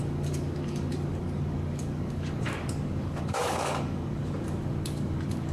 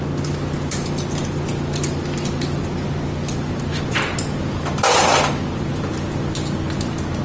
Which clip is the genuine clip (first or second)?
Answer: second